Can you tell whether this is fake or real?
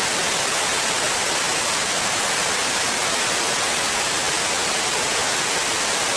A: real